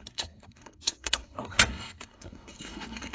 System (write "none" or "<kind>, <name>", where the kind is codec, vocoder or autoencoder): codec, SNAC